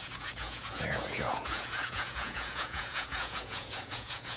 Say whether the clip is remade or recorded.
remade